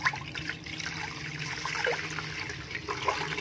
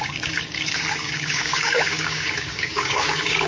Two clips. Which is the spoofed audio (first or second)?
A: second